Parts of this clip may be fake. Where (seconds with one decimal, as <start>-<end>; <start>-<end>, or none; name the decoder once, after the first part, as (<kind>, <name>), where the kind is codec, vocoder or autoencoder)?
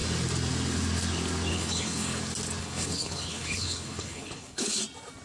1.5-2.2 (codec, HILCodec); 2.6-4.8